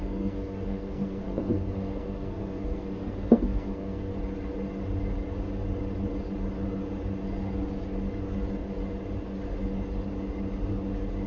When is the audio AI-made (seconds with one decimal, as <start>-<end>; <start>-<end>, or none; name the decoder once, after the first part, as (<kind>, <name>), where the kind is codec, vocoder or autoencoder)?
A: 0.0-4.1 (codec, SNAC)